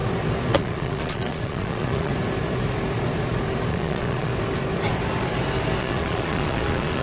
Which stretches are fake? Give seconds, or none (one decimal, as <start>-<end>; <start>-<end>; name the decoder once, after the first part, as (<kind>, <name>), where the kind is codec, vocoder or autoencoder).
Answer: 0.5-2.1 (vocoder, Vocos); 3.7-4.3; 5.8-7.0